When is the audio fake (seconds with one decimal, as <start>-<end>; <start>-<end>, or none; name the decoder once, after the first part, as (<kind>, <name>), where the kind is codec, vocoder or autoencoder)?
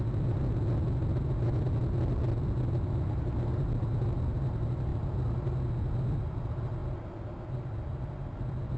none